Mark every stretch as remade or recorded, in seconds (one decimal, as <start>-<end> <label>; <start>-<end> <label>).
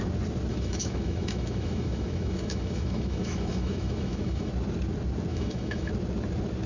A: 0.0-0.5 recorded; 0.5-4.5 remade; 4.5-5.3 recorded; 5.3-5.9 remade; 5.9-6.7 recorded